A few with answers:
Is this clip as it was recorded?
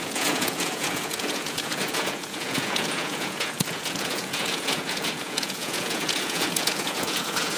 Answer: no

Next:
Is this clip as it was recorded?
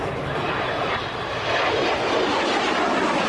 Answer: yes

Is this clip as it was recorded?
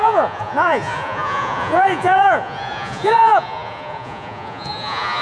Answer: no